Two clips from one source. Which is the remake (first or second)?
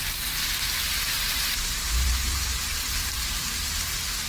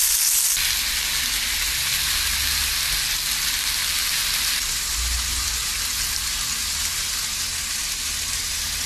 first